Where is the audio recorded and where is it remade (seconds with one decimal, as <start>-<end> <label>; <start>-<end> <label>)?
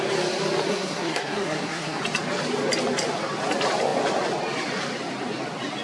0.0-0.7 recorded; 0.7-2.0 remade; 2.0-5.8 recorded